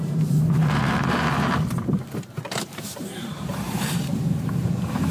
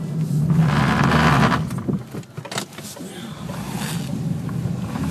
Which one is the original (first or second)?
second